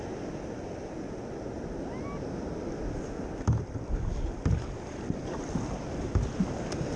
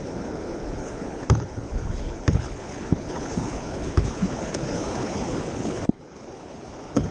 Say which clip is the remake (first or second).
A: second